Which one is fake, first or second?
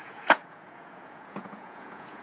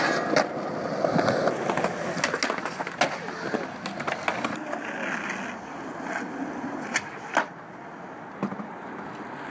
first